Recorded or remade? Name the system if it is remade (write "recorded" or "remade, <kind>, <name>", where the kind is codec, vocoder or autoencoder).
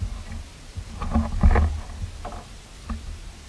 recorded